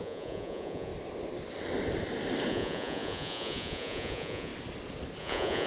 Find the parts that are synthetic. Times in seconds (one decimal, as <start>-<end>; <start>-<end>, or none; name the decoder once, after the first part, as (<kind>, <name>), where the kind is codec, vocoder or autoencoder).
0.0-0.9 (vocoder, Vocos); 2.5-4.5; 5.2-5.7